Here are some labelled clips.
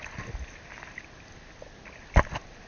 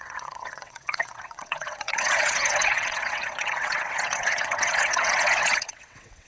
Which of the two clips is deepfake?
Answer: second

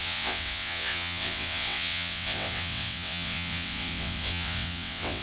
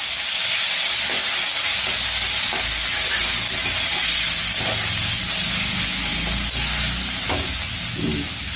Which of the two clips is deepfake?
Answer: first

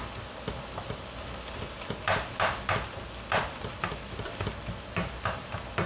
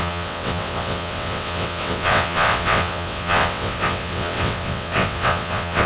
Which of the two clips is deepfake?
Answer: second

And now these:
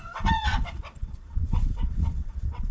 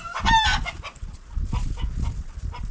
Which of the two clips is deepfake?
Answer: first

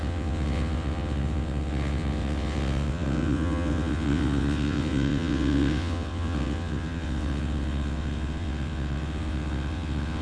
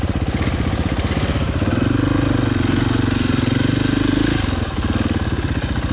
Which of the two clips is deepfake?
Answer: first